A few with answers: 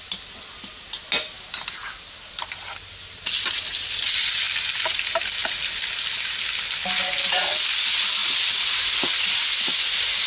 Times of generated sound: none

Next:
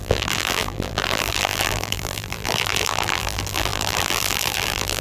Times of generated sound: 0.0-5.0 (vocoder, BigVGAN v2)

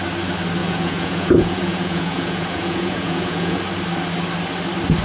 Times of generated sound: 0.6-3.6 (vocoder, Vocos)

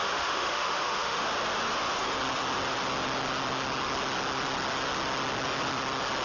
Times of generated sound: 0.0-1.2 (autoencoder, DAC-VAE)

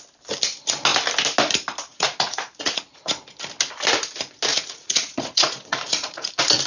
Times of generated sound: 1.9-3.1 (vocoder, Vocos); 4.5-6.3

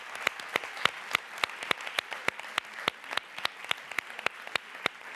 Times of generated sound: none

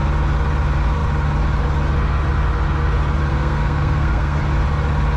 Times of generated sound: 3.3-4.4 (codec, SNAC)